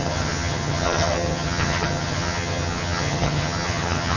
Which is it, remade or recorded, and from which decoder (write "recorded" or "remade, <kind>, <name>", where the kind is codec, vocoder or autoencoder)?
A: remade, vocoder, HiFi-GAN